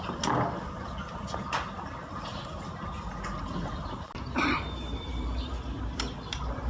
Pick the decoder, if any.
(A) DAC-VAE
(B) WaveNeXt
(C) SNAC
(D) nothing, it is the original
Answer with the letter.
D